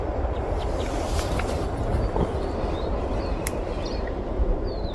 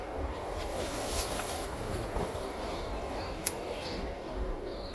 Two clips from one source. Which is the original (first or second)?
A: first